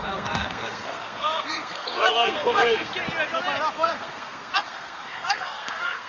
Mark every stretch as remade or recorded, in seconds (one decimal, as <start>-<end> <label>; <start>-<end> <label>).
0.0-2.9 remade; 2.9-3.7 recorded; 3.7-6.1 remade